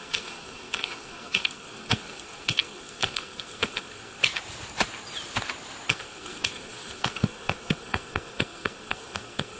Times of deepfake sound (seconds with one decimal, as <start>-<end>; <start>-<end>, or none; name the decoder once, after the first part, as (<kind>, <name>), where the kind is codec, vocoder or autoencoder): 0.0-4.2 (codec, SNAC); 5.9-9.6